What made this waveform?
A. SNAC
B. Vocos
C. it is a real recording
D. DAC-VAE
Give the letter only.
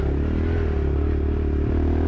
C